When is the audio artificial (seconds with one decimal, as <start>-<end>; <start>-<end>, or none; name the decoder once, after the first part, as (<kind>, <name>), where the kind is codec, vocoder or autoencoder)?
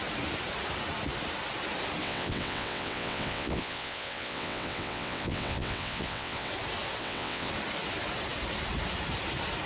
2.0-6.5 (vocoder, WaveNeXt); 7.0-7.5